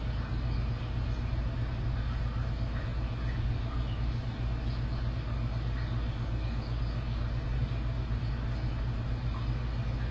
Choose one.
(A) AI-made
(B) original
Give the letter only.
B